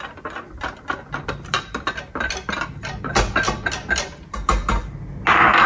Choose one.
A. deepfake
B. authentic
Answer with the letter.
B